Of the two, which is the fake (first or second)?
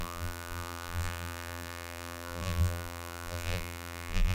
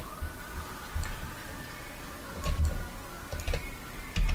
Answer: first